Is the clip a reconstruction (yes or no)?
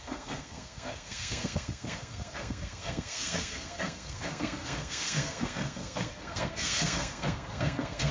yes